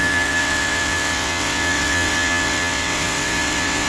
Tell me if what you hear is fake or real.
fake